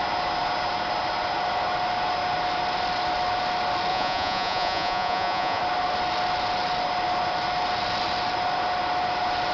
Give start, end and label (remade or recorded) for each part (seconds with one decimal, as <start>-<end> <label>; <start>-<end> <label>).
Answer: 0.0-3.9 recorded; 3.9-5.6 remade; 5.6-9.5 recorded

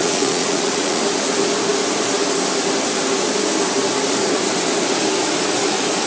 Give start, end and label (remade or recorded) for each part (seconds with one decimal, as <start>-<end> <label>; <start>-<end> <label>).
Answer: 0.0-1.0 remade; 1.0-6.1 recorded

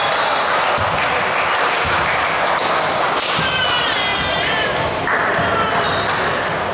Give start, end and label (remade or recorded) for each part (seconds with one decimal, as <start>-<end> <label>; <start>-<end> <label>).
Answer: 0.0-4.1 recorded; 4.1-5.2 remade; 5.2-6.7 recorded

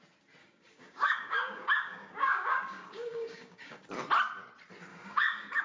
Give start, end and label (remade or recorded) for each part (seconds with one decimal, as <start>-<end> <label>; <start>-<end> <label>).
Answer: 0.0-0.4 recorded; 0.4-3.8 remade; 3.8-4.9 recorded; 4.9-5.6 remade

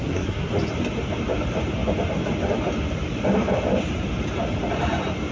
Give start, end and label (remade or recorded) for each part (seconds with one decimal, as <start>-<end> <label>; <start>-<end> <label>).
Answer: 0.0-0.5 remade; 0.5-5.3 recorded

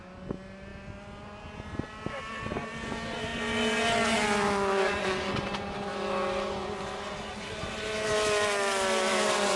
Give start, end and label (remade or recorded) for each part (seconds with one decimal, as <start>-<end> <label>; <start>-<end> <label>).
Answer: 0.0-9.6 recorded

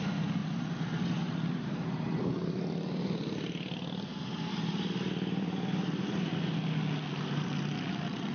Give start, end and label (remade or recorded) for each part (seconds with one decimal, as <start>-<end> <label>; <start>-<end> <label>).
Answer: 0.0-8.3 recorded

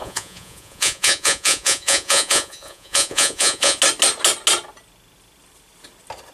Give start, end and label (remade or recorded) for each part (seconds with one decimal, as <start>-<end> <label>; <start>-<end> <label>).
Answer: 0.0-3.8 remade; 3.8-6.3 recorded